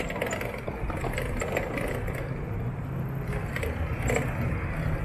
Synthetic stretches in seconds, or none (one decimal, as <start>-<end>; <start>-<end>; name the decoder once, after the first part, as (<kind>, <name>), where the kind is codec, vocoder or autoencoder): none